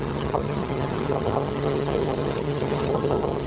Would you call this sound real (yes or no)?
no